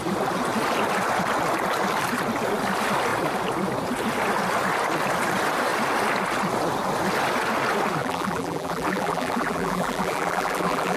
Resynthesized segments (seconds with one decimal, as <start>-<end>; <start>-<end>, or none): 8.0-11.0